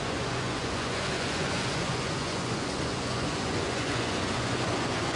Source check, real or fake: fake